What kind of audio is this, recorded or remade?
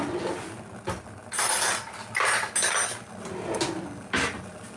recorded